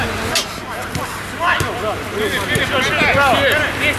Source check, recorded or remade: recorded